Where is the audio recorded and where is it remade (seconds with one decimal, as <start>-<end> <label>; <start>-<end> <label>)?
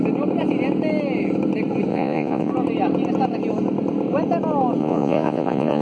0.0-1.9 recorded; 1.9-2.5 remade; 2.5-4.8 recorded; 4.8-5.8 remade